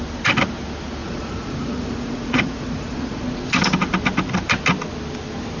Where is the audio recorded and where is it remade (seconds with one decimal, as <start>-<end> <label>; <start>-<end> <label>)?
0.0-1.0 recorded; 1.0-3.2 remade; 3.2-5.6 recorded